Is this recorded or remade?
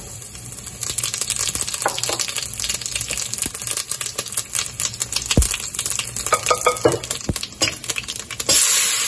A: recorded